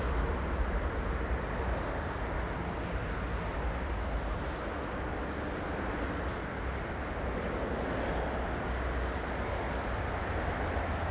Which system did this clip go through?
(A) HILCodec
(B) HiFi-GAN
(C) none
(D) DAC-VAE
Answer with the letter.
C